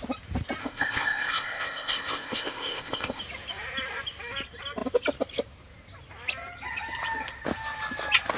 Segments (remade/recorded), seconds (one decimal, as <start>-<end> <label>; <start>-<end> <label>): 0.0-0.6 recorded; 0.6-3.2 remade; 3.2-8.4 recorded